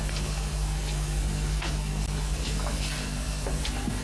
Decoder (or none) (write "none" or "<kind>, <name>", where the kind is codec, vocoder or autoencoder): codec, SNAC